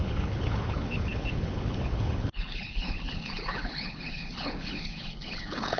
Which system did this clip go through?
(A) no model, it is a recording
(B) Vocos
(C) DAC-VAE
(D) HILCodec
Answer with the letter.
D